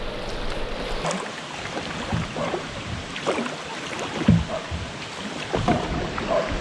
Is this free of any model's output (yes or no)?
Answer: yes